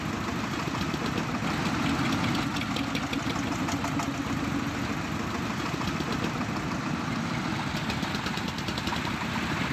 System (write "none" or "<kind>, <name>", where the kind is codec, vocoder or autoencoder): none